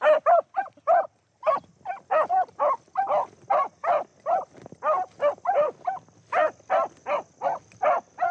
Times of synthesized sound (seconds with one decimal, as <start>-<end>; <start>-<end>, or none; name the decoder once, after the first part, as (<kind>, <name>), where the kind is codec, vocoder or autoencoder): none